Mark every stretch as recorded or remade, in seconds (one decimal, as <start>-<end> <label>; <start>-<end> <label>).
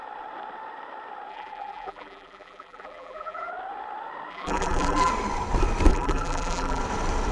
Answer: 0.0-1.3 recorded; 1.3-3.5 remade; 3.5-4.3 recorded; 4.3-5.1 remade; 5.1-5.9 recorded; 5.9-6.8 remade; 6.8-7.3 recorded